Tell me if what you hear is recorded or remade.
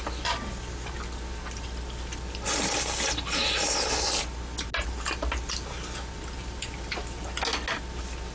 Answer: recorded